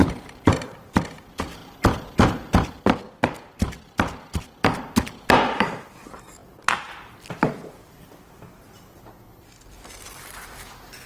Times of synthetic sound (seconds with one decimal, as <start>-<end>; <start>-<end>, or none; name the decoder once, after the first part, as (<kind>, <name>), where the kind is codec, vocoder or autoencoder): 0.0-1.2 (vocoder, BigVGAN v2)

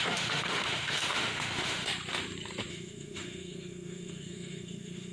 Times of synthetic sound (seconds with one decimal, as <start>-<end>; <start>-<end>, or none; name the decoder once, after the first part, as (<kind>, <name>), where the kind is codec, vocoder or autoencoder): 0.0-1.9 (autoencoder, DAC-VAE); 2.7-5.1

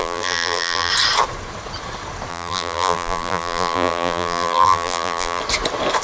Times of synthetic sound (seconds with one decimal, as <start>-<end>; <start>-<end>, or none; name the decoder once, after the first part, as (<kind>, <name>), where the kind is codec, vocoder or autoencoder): 0.0-0.9 (vocoder, BigVGAN v2); 2.3-5.4